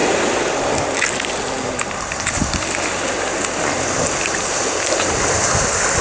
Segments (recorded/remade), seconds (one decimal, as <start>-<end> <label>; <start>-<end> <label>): 0.0-6.0 recorded